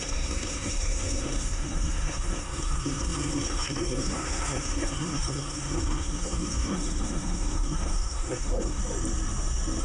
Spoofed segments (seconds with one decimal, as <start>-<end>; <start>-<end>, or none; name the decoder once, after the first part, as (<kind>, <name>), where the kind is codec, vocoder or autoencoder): 0.0-8.8 (codec, SNAC)